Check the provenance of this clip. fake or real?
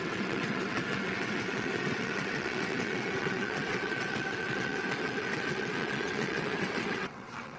fake